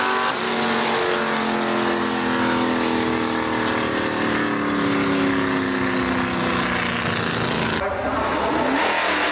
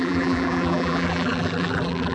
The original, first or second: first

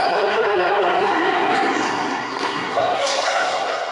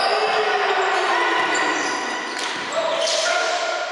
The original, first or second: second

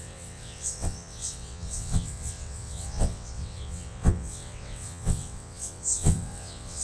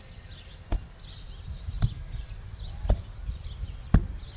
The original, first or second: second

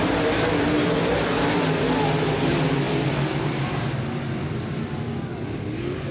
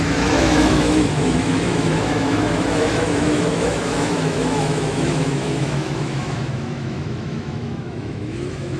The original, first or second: first